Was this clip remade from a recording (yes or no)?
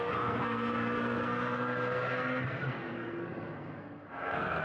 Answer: yes